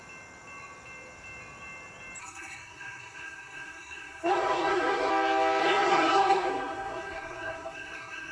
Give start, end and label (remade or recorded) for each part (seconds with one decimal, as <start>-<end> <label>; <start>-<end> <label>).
0.0-2.2 recorded; 2.2-5.1 remade; 5.1-5.6 recorded; 5.6-8.3 remade